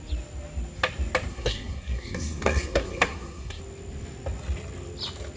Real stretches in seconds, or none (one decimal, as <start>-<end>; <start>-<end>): 0.0-1.3; 3.6-5.4